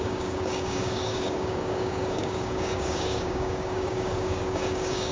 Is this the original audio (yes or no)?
no